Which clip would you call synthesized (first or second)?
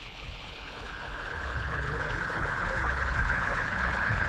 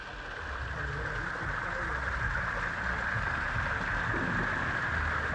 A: first